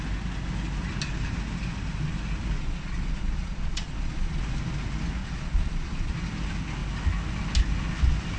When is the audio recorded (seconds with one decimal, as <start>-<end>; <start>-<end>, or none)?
0.0-2.6; 4.4-5.2; 6.1-8.4